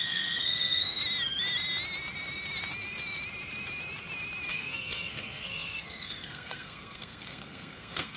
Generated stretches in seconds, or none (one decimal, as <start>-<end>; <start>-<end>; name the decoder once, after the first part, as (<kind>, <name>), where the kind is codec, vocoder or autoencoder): 0.0-1.0 (codec, SNAC); 4.5-8.2